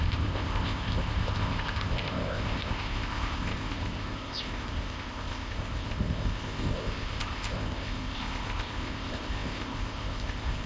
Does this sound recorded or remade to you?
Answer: remade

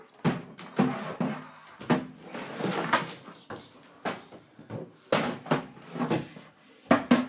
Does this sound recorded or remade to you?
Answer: recorded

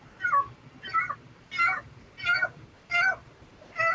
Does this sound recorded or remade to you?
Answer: remade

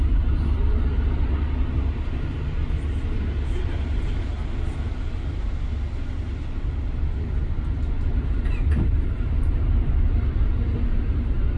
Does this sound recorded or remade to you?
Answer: recorded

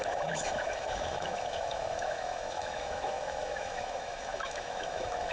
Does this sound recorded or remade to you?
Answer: remade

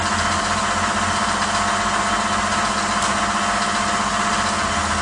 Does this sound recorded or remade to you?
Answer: recorded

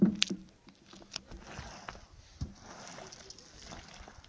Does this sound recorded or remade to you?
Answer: recorded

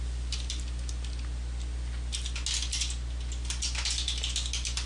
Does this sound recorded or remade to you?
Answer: recorded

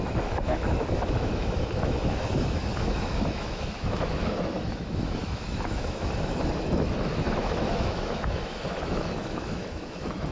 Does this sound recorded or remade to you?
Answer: remade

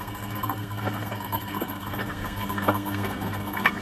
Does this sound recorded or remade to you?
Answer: remade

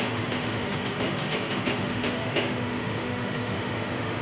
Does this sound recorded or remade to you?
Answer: remade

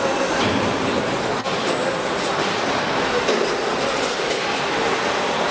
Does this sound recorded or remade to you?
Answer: recorded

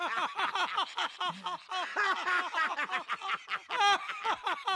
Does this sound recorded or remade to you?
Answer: recorded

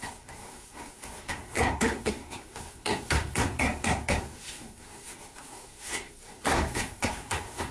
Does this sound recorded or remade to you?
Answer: remade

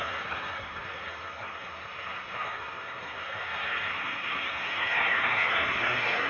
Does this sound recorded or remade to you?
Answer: remade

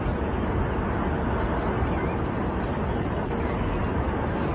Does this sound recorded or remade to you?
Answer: recorded